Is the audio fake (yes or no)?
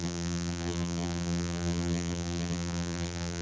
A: yes